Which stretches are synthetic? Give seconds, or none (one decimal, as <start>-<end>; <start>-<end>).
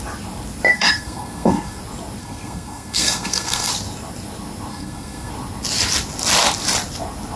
0.7-1.8; 2.2-3.7; 4.7-5.3